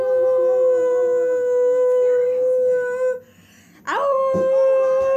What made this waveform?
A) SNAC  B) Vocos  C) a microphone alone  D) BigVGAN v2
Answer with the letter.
C